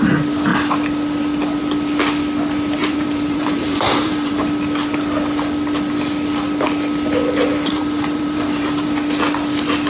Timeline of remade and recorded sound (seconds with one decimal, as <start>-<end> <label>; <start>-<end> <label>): 0.0-2.8 recorded; 2.8-4.3 remade; 4.3-7.5 recorded; 7.5-8.9 remade; 8.9-9.9 recorded